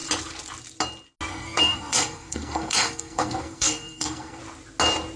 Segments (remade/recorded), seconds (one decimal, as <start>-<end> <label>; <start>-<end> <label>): 0.0-1.3 recorded; 1.3-4.4 remade; 4.4-5.2 recorded